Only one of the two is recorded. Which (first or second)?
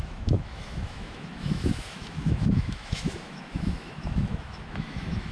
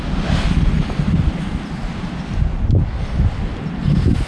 second